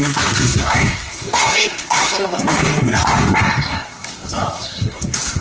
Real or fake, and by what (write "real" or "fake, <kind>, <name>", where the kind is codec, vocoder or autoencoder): fake, codec, SNAC